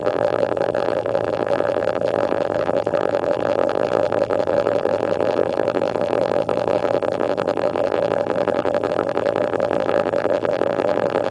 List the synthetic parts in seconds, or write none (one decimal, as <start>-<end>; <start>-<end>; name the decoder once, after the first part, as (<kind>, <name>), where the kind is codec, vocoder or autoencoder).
0.0-11.3 (vocoder, BigVGAN v2)